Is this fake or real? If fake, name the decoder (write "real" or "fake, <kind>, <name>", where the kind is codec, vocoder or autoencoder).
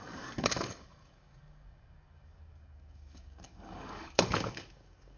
fake, codec, DAC